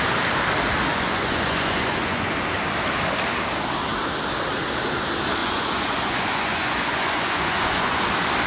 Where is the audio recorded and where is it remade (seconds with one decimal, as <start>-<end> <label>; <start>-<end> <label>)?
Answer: 0.0-0.9 recorded; 0.9-2.3 remade; 2.3-5.4 recorded; 5.4-8.0 remade; 8.0-8.5 recorded